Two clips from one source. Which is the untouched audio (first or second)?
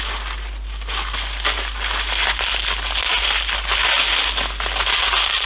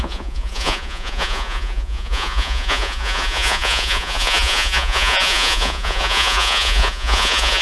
first